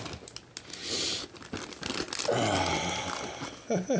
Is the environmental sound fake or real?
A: real